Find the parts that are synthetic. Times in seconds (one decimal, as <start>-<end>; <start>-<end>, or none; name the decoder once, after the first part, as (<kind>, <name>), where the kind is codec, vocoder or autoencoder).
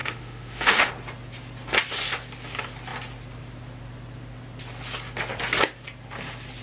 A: 0.0-0.9 (autoencoder, DAC-VAE)